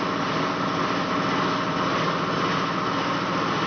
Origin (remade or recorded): recorded